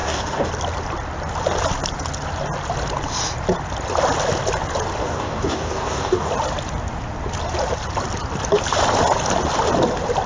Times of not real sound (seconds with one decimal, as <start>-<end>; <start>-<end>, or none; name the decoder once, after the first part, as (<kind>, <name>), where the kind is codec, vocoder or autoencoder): 0.0-0.5 (codec, DAC); 5.0-6.3